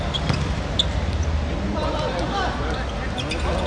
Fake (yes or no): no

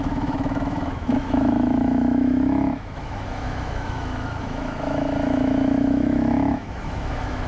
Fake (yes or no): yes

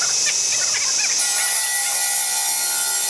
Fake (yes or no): no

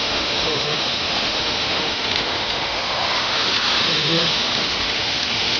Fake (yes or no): yes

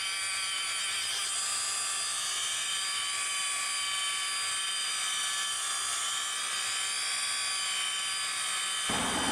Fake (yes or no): no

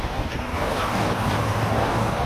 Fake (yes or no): yes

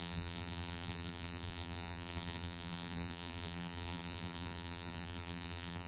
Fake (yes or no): yes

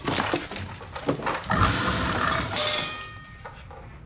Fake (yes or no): no